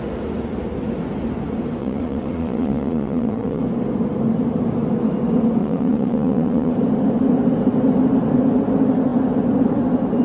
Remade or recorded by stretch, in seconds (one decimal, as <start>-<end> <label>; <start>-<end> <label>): 0.0-1.8 recorded; 1.8-3.6 remade; 3.6-5.6 recorded; 5.6-6.7 remade; 6.7-10.2 recorded

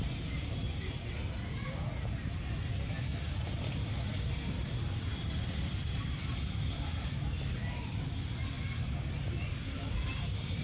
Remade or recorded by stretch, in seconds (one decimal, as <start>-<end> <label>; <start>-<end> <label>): 0.0-10.6 recorded